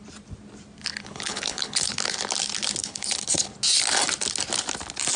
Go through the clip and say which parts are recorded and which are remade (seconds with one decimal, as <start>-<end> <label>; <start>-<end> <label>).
0.0-0.9 recorded; 0.9-2.0 remade; 2.0-2.8 recorded; 2.8-3.5 remade; 3.5-5.2 recorded

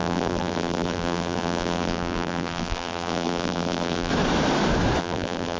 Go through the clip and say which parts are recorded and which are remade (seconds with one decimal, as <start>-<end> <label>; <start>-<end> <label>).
0.0-4.1 remade; 4.1-5.0 recorded; 5.0-5.6 remade

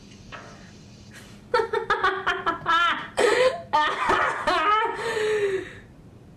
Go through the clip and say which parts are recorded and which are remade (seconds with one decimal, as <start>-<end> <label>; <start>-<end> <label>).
0.0-1.8 remade; 1.8-3.1 recorded; 3.1-5.1 remade; 5.1-5.9 recorded; 5.9-6.4 remade

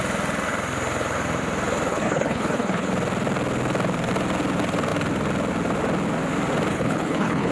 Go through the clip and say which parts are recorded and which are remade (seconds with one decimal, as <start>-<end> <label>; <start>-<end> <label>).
0.0-1.9 recorded; 1.9-2.9 remade; 2.9-6.7 recorded; 6.7-7.5 remade

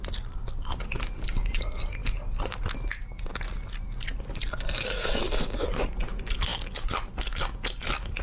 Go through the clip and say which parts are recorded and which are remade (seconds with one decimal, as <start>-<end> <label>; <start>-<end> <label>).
0.0-8.2 recorded